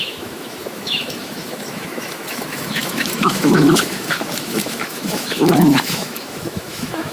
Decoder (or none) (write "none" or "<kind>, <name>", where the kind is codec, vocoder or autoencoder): autoencoder, DAC-VAE